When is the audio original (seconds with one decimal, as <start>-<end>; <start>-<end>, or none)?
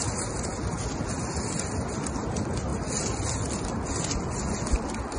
0.0-5.2